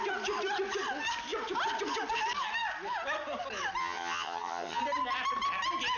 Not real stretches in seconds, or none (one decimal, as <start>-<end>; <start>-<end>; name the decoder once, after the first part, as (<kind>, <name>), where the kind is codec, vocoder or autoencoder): 3.8-4.8 (vocoder, HiFi-GAN)